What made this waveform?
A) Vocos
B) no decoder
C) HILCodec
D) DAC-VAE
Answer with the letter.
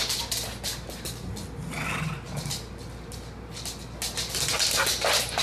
B